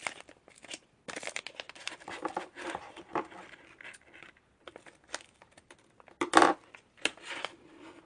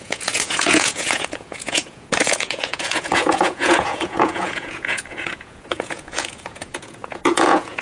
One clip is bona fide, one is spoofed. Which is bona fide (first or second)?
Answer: first